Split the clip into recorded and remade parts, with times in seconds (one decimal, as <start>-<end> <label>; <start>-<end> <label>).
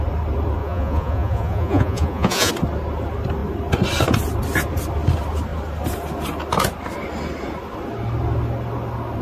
0.0-0.6 recorded; 0.6-2.5 remade; 2.5-9.2 recorded